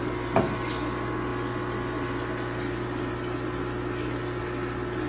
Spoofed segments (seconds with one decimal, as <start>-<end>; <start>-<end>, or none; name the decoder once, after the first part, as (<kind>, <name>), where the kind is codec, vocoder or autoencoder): none